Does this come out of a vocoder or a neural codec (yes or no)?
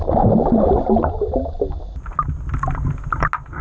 no